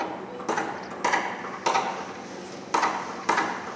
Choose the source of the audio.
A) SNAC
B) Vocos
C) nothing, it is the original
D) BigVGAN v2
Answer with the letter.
C